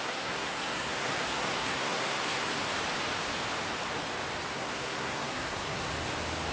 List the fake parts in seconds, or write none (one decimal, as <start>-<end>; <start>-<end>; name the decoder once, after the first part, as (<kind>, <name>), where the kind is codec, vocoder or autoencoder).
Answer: 0.0-2.7 (codec, SNAC); 4.5-5.9